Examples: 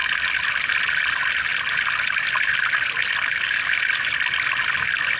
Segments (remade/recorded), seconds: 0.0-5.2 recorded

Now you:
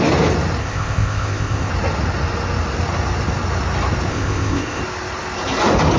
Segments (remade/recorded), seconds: 0.0-0.6 recorded; 0.6-1.7 remade; 1.7-4.1 recorded; 4.1-4.8 remade; 4.8-6.0 recorded

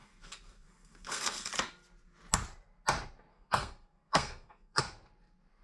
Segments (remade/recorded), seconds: 0.0-1.5 remade; 1.5-3.3 recorded; 3.3-4.8 remade; 4.8-5.6 recorded